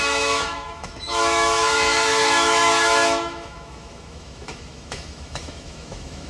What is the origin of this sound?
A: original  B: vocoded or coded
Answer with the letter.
B